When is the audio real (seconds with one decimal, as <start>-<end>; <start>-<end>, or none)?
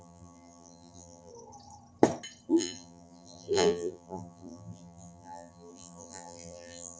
1.3-2.5